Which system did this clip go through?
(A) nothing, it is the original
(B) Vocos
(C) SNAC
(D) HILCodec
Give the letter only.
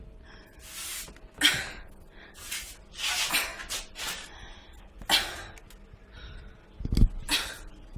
A